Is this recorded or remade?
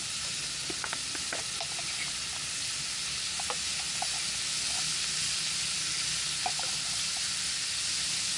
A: recorded